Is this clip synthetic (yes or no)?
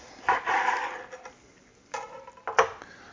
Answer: no